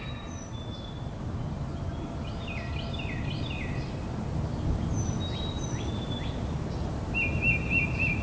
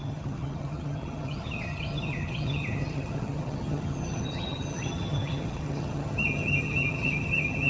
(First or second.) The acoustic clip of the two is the first